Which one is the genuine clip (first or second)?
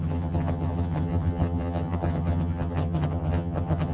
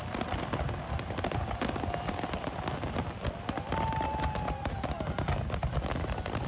second